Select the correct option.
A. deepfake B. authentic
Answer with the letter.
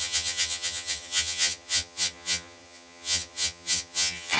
A